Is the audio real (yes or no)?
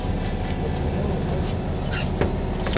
yes